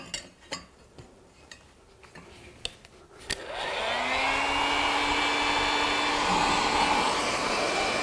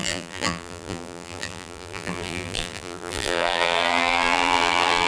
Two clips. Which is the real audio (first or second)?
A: first